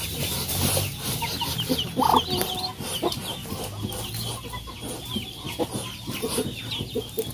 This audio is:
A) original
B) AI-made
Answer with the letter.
A